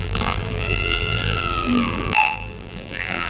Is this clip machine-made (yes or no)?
yes